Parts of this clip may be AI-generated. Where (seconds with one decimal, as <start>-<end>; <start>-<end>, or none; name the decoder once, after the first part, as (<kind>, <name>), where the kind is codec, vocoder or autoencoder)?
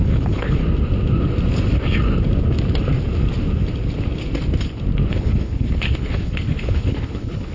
0.0-0.6 (codec, HILCodec); 5.1-7.5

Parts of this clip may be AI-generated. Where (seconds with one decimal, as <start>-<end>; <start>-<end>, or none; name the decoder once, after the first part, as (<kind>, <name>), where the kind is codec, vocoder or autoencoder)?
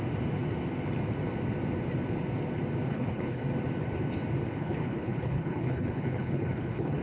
2.9-3.4 (codec, HILCodec); 4.6-7.0